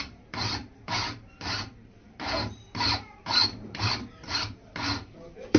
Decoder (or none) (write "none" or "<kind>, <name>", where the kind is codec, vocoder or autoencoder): vocoder, BigVGAN v2